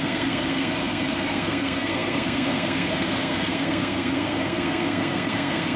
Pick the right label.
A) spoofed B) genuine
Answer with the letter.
A